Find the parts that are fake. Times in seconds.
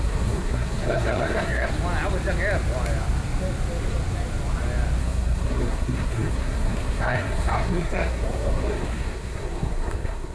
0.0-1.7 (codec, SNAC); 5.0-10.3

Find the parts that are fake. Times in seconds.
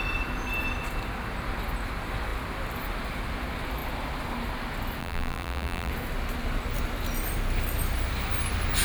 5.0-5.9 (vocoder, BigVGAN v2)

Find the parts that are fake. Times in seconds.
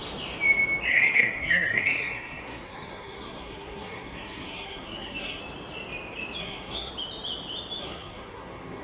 0.9-5.4 (codec, SNAC); 6.4-6.9; 7.8-8.8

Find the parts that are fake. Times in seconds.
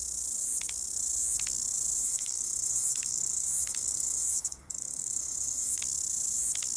2.0-5.8 (codec, SNAC)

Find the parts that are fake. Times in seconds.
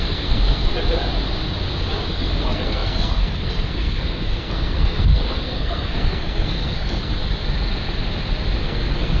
0.0-0.7 (codec, SNAC); 2.1-7.2; 8.6-9.2